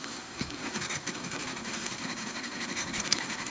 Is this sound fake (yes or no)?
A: yes